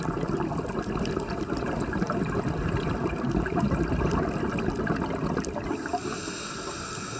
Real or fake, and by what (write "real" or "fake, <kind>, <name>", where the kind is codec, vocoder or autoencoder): real